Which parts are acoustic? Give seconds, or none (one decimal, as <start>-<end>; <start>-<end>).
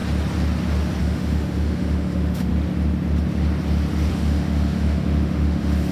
0.0-1.0; 2.5-4.1